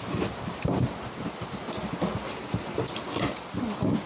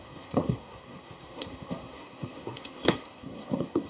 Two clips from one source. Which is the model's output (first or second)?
second